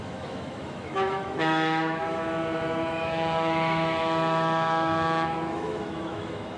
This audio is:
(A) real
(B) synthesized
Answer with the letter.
B